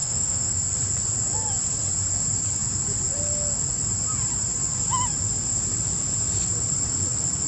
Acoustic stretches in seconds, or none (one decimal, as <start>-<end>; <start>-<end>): 0.6-7.5

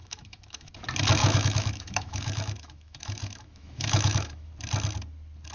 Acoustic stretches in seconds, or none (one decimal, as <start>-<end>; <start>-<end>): 0.7-1.2; 4.5-5.5